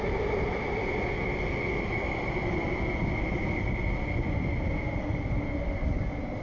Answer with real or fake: real